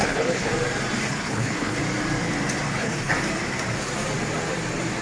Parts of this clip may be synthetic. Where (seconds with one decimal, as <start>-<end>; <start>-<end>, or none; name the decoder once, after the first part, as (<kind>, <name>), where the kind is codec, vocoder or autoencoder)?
0.0-0.5 (codec, HILCodec); 1.1-1.8; 2.7-3.1